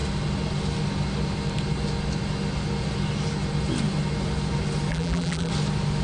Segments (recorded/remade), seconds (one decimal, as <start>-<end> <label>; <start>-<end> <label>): 0.0-4.9 recorded; 4.9-5.5 remade; 5.5-6.0 recorded